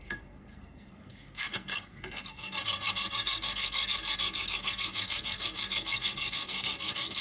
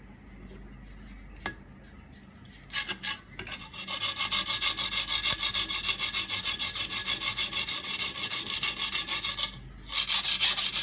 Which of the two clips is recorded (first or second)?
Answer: second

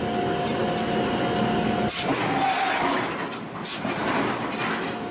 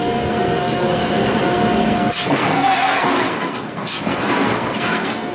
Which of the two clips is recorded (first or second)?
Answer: first